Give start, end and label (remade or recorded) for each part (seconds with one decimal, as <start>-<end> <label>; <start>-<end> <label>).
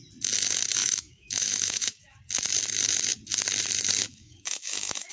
0.0-0.8 recorded; 0.8-2.2 remade; 2.2-4.0 recorded; 4.0-5.1 remade